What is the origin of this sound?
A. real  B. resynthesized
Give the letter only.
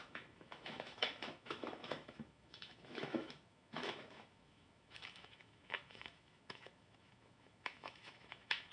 B